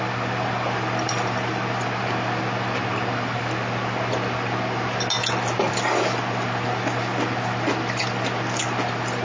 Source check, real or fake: real